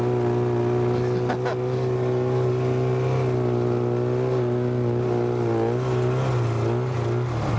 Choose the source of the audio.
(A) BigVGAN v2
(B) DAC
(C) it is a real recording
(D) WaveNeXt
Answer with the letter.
C